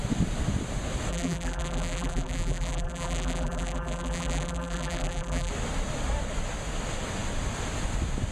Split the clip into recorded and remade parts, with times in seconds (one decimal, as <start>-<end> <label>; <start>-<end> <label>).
0.0-1.1 recorded; 1.1-5.5 remade; 5.5-8.3 recorded